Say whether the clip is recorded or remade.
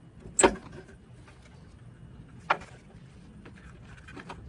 recorded